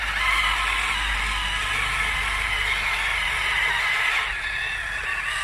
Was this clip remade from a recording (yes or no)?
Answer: no